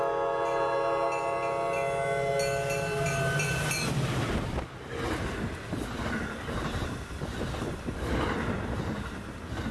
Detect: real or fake real